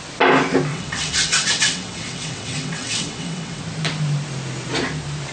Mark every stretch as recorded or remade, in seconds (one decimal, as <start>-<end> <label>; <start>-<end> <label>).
0.0-0.7 recorded; 0.7-3.6 remade; 3.6-5.3 recorded